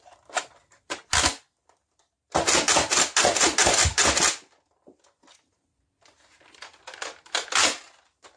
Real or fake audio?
real